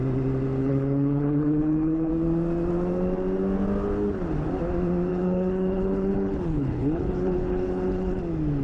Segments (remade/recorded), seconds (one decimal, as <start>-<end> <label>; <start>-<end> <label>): 0.0-0.6 recorded; 0.6-2.1 remade; 2.1-5.1 recorded; 5.1-8.2 remade; 8.2-8.6 recorded